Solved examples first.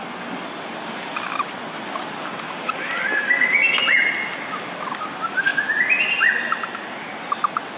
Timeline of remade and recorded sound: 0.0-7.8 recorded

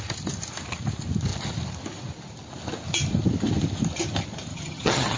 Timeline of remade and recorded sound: 0.0-4.5 recorded; 4.5-5.2 remade

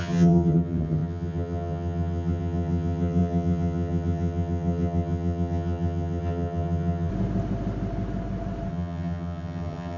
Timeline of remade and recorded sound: 0.0-7.1 remade; 7.1-8.7 recorded; 8.7-10.0 remade

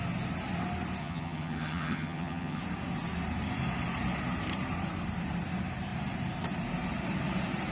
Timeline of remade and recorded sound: 0.0-1.0 recorded; 1.0-2.6 remade; 2.6-7.7 recorded

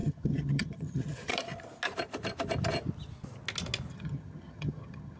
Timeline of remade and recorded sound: 0.0-1.3 remade; 1.3-3.9 recorded; 3.9-5.2 remade

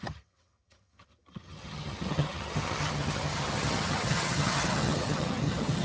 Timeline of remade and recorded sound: 0.0-5.8 remade

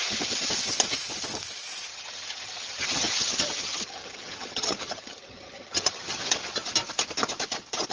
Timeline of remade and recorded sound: 0.0-1.9 recorded; 1.9-6.2 remade; 6.2-7.9 recorded